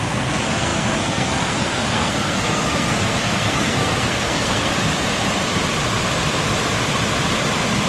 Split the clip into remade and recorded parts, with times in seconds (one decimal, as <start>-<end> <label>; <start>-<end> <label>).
0.0-4.7 remade; 4.7-7.9 recorded